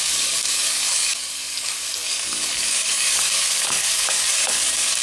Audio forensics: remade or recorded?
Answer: remade